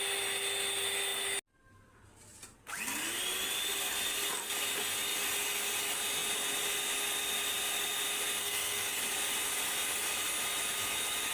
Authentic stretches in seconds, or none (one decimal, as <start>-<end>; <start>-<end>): 0.0-8.4; 9.0-11.3